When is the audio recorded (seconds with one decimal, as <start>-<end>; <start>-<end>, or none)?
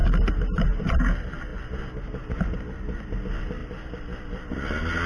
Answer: 1.5-2.2